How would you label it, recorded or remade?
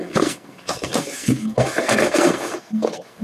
remade